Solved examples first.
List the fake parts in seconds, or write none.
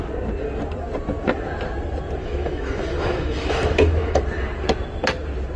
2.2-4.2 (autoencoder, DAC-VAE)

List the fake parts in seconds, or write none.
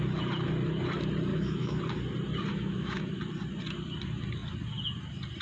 1.3-1.8 (autoencoder, DAC-VAE); 2.5-3.2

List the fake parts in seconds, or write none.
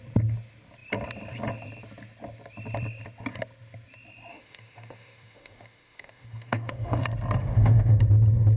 4.3-7.0 (autoencoder, DAC-VAE); 7.4-8.0